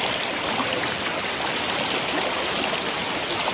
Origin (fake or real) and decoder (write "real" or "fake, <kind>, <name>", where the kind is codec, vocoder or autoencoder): fake, vocoder, BigVGAN v2